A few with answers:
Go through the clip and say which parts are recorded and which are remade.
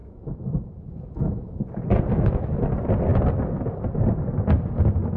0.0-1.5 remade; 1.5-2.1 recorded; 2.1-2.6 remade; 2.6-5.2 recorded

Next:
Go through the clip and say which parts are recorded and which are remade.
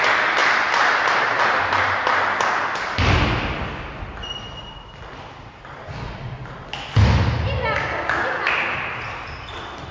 0.0-9.9 recorded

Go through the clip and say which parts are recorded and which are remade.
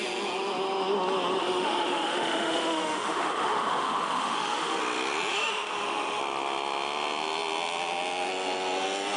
0.0-1.4 recorded; 1.4-4.8 remade; 4.8-5.3 recorded; 5.3-6.2 remade; 6.2-9.2 recorded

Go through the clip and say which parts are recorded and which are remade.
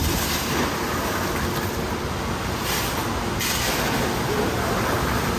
0.0-5.4 recorded